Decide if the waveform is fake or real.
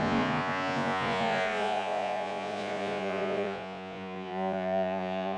fake